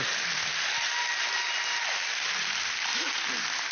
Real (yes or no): yes